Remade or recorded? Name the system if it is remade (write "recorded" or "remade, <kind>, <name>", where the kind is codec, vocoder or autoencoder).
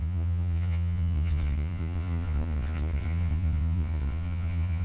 remade, vocoder, Vocos